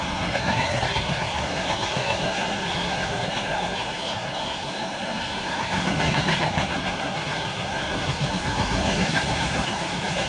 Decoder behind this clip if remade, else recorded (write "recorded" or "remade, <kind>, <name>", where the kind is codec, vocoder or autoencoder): remade, codec, SNAC